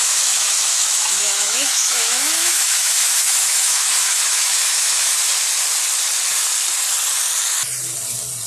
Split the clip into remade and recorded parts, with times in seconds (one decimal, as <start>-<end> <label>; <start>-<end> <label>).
0.0-5.1 remade; 5.1-8.5 recorded